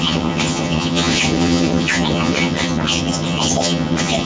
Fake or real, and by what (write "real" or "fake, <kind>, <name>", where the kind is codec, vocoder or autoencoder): fake, vocoder, HiFi-GAN